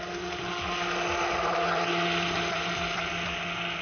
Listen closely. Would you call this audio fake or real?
real